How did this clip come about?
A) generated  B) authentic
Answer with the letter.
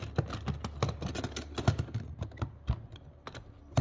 B